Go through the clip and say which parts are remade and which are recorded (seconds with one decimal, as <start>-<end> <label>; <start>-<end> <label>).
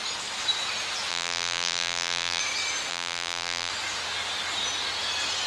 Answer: 0.0-1.1 recorded; 1.1-2.4 remade; 2.4-2.9 recorded; 2.9-3.7 remade; 3.7-5.5 recorded